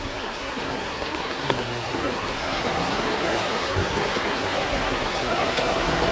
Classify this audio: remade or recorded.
remade